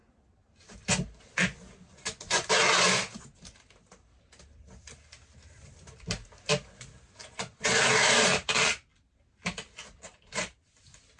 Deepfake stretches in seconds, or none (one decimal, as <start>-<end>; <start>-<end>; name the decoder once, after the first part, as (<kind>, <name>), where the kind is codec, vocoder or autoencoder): 1.9-2.5 (vocoder, Vocos); 7.2-7.7